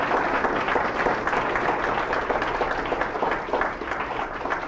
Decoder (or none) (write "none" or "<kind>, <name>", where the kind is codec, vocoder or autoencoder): none